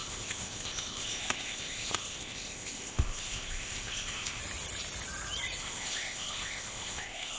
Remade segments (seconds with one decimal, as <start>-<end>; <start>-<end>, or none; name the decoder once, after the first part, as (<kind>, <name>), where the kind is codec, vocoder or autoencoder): 0.0-4.4 (codec, ZipCodec); 5.6-7.4